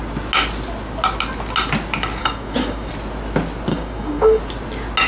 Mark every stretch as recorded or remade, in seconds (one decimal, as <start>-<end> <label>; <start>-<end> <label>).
0.0-2.2 recorded; 2.2-2.9 remade; 2.9-3.7 recorded; 3.7-4.4 remade; 4.4-5.1 recorded